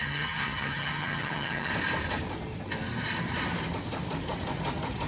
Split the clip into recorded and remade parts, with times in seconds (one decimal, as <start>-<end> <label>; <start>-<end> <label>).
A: 0.0-1.7 remade; 1.7-5.1 recorded